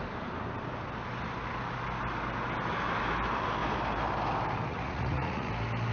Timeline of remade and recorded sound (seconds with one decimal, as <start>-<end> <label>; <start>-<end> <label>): 0.0-4.7 recorded; 4.7-5.5 remade; 5.5-5.9 recorded